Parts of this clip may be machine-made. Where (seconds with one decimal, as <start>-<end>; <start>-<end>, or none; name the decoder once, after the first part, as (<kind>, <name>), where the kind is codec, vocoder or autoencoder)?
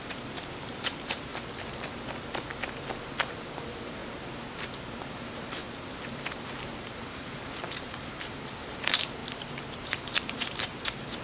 0.0-1.3 (vocoder, BigVGAN v2); 3.3-4.0; 5.1-5.6; 6.6-11.2